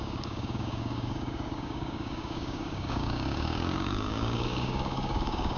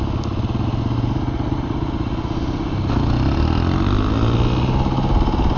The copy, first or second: first